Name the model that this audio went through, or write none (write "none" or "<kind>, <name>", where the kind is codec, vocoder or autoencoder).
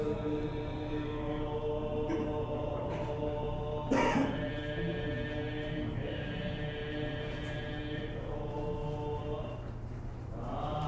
none